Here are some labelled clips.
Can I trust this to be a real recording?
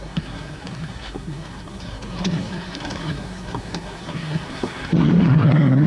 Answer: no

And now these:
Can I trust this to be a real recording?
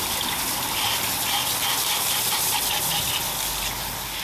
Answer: yes